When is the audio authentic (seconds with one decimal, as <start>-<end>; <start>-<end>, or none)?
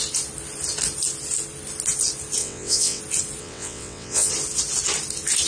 0.0-2.4; 3.0-3.4; 4.3-5.5